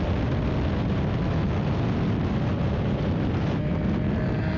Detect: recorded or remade recorded